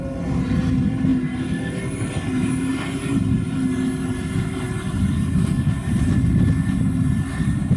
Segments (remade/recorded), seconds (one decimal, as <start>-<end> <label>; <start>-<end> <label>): 0.0-7.8 recorded